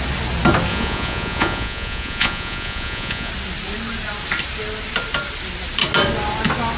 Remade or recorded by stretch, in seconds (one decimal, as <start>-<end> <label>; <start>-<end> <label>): 0.0-0.7 recorded; 0.7-3.3 remade; 3.3-6.8 recorded